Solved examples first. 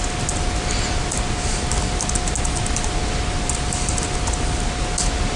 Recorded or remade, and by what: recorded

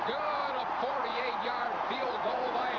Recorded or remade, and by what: remade, vocoder, Vocos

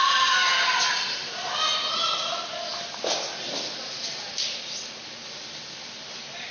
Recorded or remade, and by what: recorded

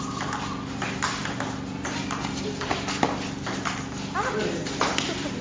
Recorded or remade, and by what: recorded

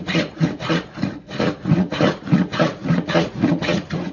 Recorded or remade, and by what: remade, vocoder, Vocos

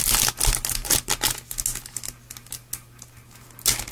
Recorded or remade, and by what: recorded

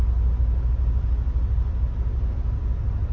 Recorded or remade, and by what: recorded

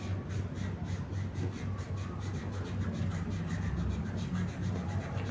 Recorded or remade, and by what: recorded